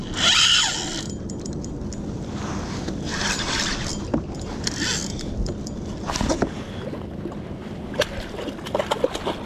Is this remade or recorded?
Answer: recorded